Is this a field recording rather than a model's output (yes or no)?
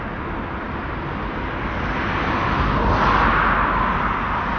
yes